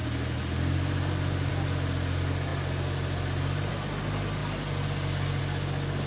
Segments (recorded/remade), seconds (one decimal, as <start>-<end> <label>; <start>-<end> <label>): 0.0-6.1 recorded